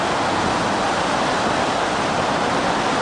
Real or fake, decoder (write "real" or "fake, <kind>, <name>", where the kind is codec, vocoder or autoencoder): real